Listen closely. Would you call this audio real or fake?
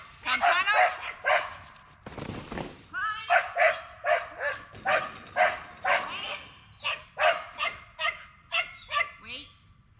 real